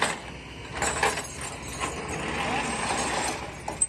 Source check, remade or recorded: recorded